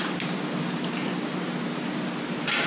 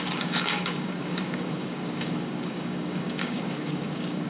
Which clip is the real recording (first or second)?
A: first